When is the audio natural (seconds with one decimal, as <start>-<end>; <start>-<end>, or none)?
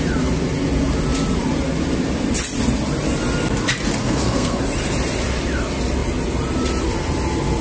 0.0-4.0; 4.6-7.6